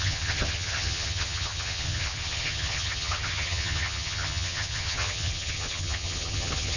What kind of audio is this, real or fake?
fake